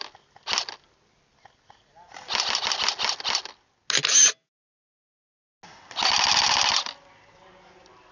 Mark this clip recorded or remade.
recorded